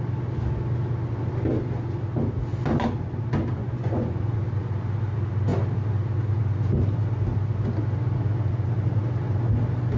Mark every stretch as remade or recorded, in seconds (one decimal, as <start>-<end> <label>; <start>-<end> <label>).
0.0-3.6 recorded; 3.6-4.3 remade; 4.3-10.0 recorded